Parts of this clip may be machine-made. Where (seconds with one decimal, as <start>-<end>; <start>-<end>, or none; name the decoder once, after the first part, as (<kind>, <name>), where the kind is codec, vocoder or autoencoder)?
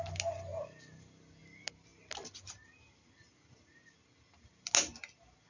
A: none